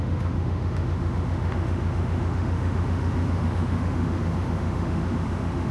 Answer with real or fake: fake